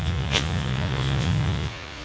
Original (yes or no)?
no